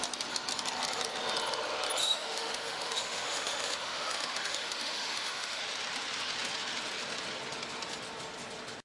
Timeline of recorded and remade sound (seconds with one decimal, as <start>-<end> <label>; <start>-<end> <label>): 0.0-2.0 recorded; 2.0-5.6 remade; 5.6-8.8 recorded